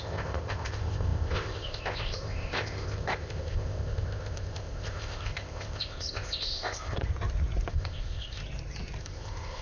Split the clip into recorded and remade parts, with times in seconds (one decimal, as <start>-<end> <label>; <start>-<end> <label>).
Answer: 0.0-7.0 remade; 7.0-7.7 recorded; 7.7-8.4 remade; 8.4-9.0 recorded; 9.0-9.6 remade